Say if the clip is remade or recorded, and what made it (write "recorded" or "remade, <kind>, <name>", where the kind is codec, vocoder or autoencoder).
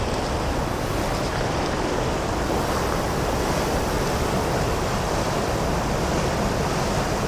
recorded